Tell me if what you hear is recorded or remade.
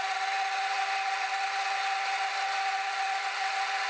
recorded